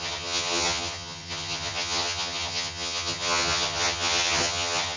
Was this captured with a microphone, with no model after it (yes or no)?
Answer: no